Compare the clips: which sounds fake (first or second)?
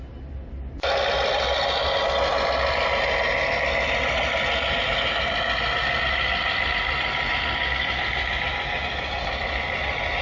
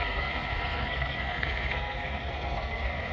second